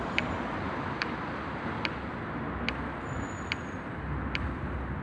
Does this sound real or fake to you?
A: real